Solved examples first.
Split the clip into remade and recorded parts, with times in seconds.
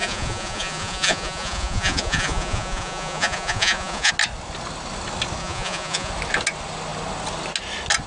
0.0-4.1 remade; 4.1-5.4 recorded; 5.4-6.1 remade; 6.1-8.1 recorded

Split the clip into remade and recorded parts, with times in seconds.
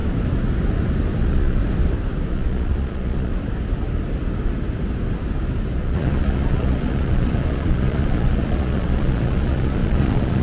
0.0-1.2 recorded; 1.2-1.6 remade; 1.6-2.3 recorded; 2.3-3.3 remade; 3.3-5.8 recorded; 5.8-10.4 remade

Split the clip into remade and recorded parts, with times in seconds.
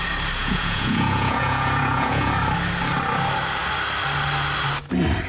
0.0-0.4 recorded; 0.4-2.3 remade; 2.3-5.3 recorded